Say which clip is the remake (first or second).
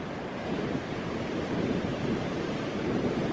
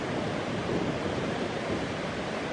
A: first